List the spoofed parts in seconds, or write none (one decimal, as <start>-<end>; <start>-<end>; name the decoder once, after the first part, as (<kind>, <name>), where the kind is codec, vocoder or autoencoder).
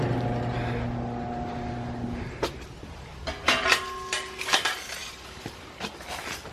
none